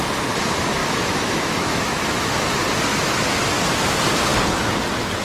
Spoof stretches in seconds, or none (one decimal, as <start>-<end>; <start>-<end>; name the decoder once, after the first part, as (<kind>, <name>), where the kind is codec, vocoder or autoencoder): 0.8-2.6 (autoencoder, DAC-VAE)